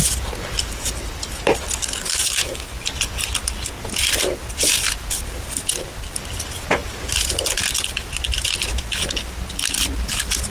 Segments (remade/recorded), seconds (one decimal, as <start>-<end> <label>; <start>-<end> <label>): 0.0-2.1 recorded; 2.1-2.7 remade; 2.7-10.5 recorded